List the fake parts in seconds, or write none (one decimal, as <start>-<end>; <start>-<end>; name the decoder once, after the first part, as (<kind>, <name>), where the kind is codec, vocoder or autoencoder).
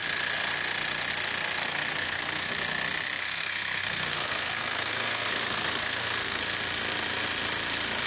1.6-2.5 (codec, SNAC); 3.2-6.4